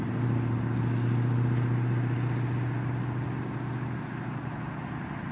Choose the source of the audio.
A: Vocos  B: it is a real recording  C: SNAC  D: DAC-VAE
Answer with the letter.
B